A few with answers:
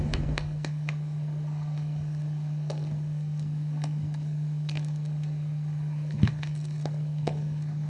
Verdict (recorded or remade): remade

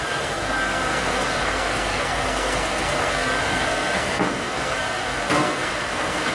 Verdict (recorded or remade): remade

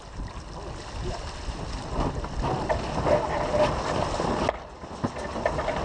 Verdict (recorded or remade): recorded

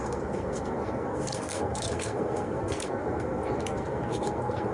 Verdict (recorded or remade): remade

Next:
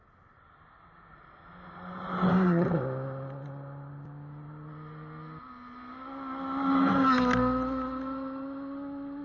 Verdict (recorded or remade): recorded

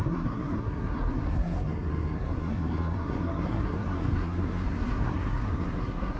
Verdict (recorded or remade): remade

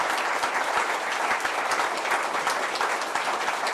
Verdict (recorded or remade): recorded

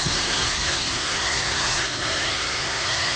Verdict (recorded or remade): remade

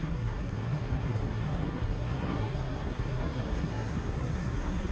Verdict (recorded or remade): remade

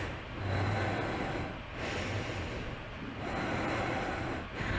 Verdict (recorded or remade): recorded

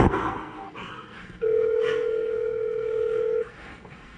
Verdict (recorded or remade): remade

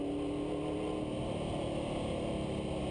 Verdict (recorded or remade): recorded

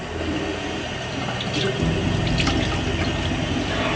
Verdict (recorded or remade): recorded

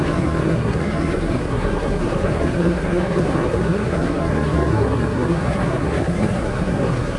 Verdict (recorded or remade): remade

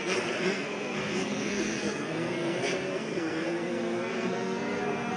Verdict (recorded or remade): remade